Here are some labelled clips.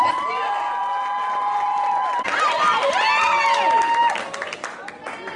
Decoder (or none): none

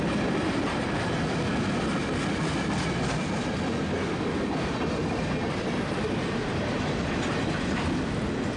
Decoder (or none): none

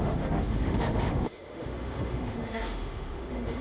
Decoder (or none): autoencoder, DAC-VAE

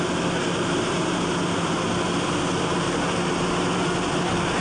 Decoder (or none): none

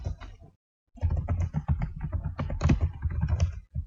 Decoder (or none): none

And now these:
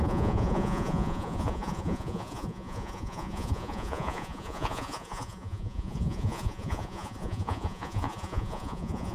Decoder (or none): vocoder, Vocos